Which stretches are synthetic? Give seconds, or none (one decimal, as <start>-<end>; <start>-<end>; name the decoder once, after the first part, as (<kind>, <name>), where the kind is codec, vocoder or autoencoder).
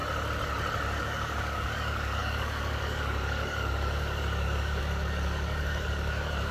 1.0-6.5 (codec, DAC)